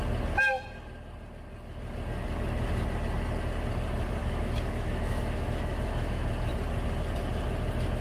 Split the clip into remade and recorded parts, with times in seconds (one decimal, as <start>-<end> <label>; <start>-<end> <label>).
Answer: 0.0-4.2 recorded; 4.2-6.3 remade; 6.3-8.0 recorded